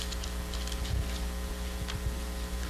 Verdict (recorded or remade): recorded